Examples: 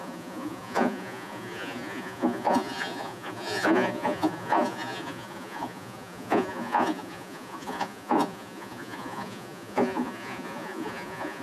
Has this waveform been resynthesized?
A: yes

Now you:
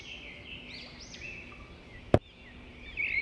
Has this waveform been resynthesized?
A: no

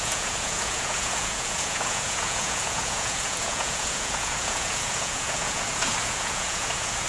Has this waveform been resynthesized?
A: yes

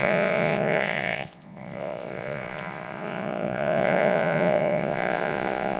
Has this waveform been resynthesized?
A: yes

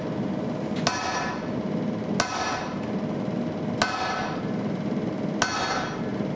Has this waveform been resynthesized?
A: no